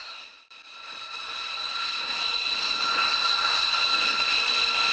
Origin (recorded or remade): remade